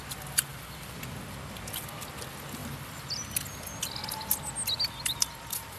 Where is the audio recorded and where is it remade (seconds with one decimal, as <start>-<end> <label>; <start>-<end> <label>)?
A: 0.0-0.5 recorded; 0.5-1.0 remade; 1.0-2.6 recorded; 2.6-4.0 remade; 4.0-5.8 recorded